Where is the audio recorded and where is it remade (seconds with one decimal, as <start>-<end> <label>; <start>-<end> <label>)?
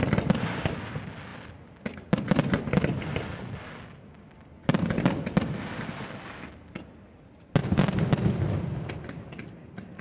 0.0-10.0 recorded